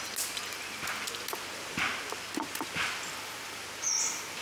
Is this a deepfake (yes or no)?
no